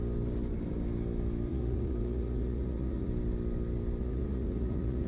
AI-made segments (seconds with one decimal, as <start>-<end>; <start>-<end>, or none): 1.5-3.1; 4.0-5.1